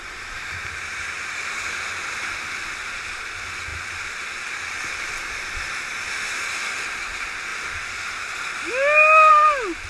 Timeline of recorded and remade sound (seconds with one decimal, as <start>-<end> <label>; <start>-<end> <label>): 0.0-0.4 recorded; 0.4-1.7 remade; 1.7-9.9 recorded